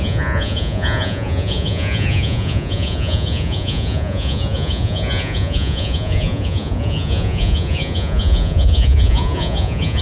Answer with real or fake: fake